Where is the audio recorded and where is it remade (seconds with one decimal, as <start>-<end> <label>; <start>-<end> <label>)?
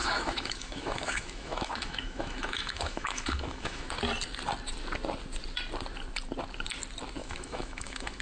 0.0-3.9 remade; 3.9-7.2 recorded; 7.2-8.2 remade